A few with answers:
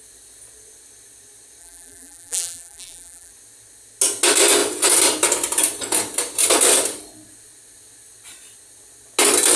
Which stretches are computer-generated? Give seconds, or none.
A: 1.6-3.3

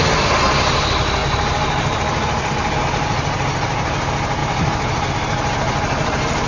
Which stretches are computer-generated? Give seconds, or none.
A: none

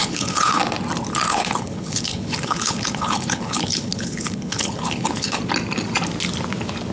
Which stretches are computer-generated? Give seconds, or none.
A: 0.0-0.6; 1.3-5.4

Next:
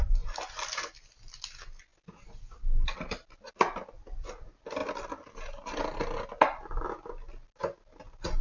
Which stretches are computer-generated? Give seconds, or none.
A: none

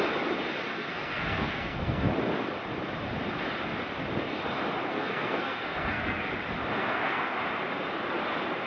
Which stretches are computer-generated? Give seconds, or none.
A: 0.7-2.1; 4.9-6.3; 6.8-7.3